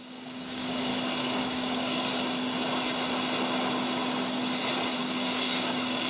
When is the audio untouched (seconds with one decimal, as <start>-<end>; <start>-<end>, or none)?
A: 0.9-1.4; 2.1-5.0